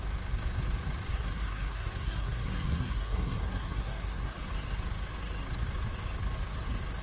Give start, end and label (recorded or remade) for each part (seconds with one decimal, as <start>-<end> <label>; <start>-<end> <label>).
0.0-1.1 recorded; 1.1-4.5 remade; 4.5-7.0 recorded